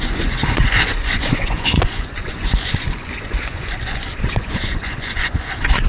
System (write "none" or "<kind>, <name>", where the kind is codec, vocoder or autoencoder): vocoder, Vocos